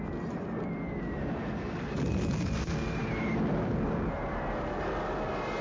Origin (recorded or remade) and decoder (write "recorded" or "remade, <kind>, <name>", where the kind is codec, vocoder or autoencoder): recorded